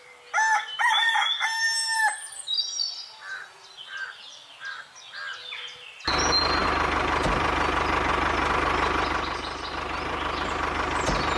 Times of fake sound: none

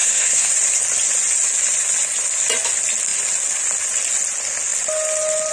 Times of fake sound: 0.0-0.5 (codec, SNAC)

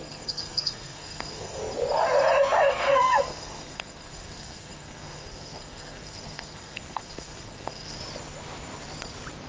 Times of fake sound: 0.0-1.6 (codec, SNAC); 2.7-8.0